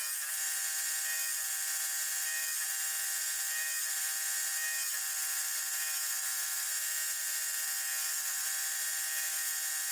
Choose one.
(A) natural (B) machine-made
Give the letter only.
A